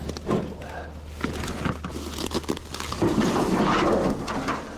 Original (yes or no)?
yes